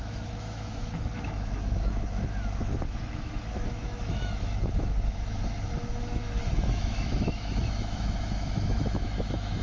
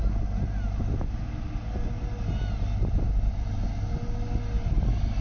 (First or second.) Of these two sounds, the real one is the second